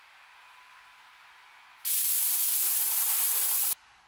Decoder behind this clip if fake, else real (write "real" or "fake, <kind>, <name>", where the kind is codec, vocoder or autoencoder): real